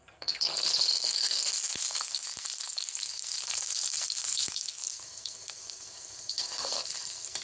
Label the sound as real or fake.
fake